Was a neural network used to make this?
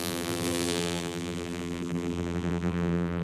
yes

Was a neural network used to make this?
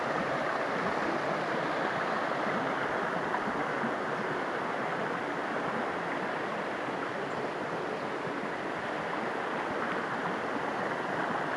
no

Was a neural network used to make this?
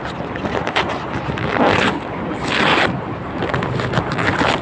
no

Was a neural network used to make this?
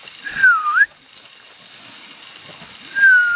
no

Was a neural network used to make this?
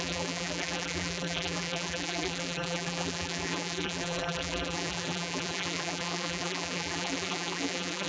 yes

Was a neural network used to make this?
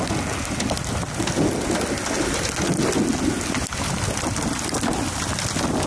no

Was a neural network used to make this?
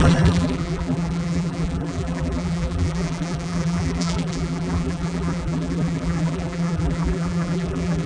yes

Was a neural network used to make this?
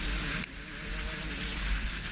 no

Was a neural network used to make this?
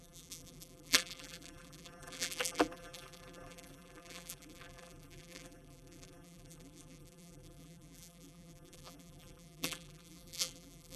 yes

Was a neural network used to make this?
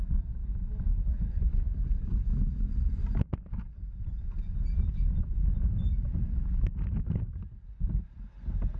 no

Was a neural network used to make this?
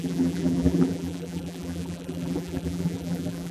yes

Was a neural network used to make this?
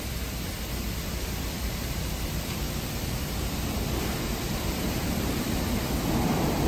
yes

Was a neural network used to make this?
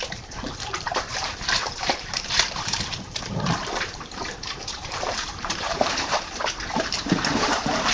yes